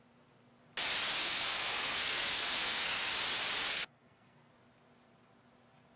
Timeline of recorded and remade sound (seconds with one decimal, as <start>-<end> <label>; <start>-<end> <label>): 0.0-1.2 recorded; 1.2-3.1 remade; 3.1-3.7 recorded; 3.7-4.5 remade; 4.5-6.0 recorded